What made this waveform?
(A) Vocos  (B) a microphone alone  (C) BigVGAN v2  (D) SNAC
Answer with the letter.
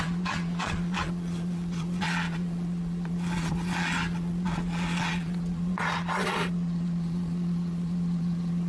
A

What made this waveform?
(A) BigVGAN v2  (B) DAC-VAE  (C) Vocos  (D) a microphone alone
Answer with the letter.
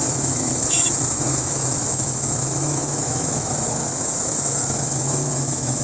B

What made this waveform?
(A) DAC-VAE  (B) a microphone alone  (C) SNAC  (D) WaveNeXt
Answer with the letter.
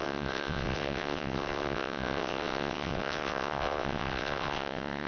D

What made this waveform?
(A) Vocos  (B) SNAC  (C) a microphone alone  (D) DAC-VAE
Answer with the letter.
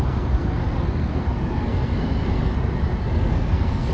B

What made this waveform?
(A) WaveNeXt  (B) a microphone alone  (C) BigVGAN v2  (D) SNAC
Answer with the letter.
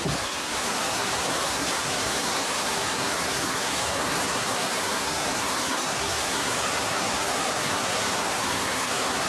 D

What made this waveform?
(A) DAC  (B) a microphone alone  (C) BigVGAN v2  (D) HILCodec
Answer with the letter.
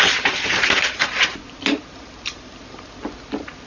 B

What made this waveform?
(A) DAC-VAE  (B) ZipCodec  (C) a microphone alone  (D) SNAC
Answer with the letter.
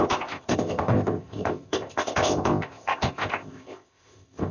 B